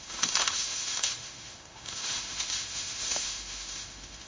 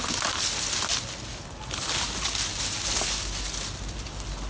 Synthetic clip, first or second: first